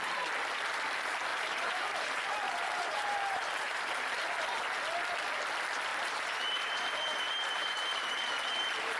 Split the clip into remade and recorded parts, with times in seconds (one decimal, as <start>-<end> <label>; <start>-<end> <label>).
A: 0.0-1.3 recorded; 1.3-4.1 remade; 4.1-5.9 recorded; 5.9-8.6 remade; 8.6-9.0 recorded